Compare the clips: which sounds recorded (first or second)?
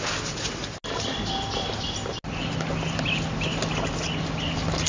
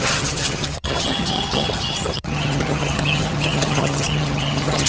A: first